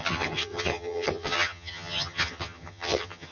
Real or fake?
fake